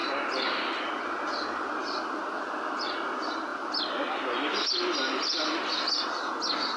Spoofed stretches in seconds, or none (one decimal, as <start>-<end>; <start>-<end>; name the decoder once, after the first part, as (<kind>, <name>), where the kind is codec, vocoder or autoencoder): none